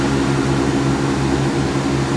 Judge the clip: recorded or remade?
recorded